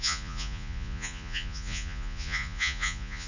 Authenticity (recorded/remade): remade